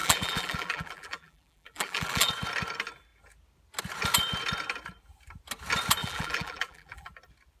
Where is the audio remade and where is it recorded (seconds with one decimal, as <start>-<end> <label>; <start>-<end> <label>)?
0.0-2.3 remade; 2.3-6.0 recorded; 6.0-7.1 remade; 7.1-7.6 recorded